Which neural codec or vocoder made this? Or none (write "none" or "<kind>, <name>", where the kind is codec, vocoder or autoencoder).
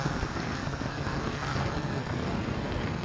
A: codec, SNAC